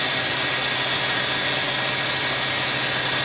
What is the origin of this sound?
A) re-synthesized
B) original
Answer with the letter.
B